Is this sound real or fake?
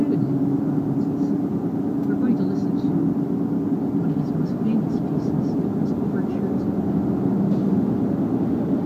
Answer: real